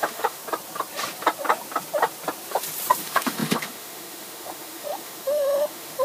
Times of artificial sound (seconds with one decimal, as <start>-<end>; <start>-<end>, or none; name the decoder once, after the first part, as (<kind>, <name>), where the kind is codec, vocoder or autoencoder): 0.0-0.4 (autoencoder, DAC-VAE); 3.0-6.0